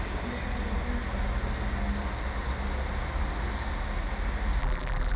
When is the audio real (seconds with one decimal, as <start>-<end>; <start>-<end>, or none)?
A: 0.0-4.6